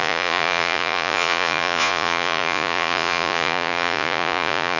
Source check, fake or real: fake